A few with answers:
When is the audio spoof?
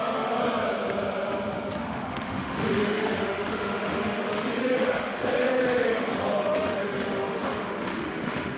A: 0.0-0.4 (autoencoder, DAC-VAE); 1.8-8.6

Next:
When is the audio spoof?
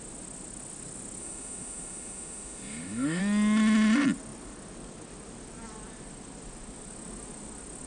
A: 1.2-3.2 (autoencoder, DAC-VAE)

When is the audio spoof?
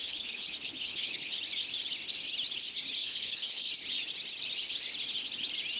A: 0.0-1.4 (codec, HILCodec); 3.0-3.7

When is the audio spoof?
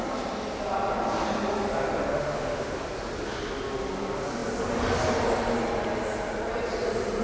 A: 2.1-2.8 (autoencoder, DAC-VAE)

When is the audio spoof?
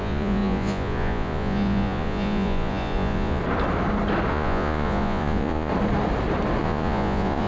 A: 0.0-3.4 (vocoder, Vocos); 4.3-5.7; 6.6-7.5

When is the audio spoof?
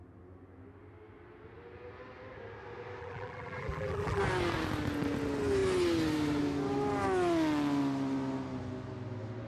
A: 3.0-4.2 (vocoder, BigVGAN v2)